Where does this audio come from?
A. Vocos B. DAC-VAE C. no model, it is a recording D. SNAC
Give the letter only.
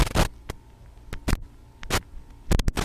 C